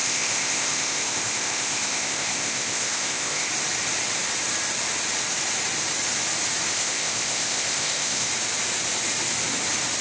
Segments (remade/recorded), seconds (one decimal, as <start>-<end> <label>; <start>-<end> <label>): 0.0-3.5 remade; 3.5-6.7 recorded; 6.7-8.3 remade; 8.3-10.0 recorded